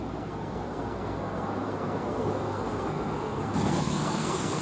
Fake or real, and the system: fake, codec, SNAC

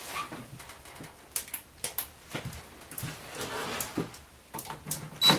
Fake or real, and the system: real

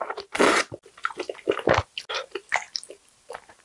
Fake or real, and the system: real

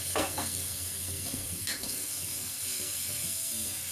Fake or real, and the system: fake, codec, SNAC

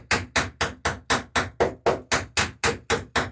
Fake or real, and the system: real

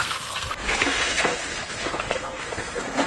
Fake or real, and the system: fake, codec, SNAC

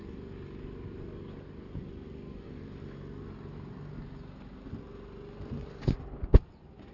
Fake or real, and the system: real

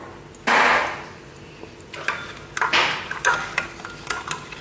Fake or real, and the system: real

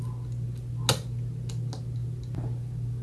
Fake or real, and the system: real